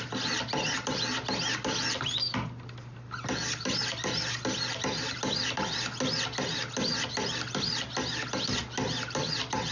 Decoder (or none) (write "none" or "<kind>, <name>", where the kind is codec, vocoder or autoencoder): none